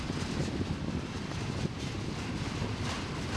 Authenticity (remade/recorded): remade